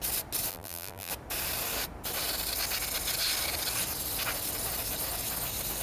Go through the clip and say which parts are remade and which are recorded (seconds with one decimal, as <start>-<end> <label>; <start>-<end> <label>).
0.0-0.5 recorded; 0.5-1.1 remade; 1.1-5.8 recorded